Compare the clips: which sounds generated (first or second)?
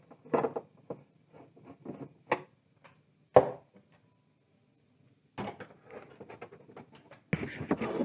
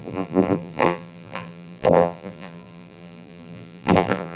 second